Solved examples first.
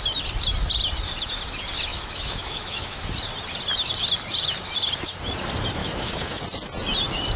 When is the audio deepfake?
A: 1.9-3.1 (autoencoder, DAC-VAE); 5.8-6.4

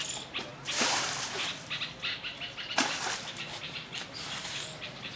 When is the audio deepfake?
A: none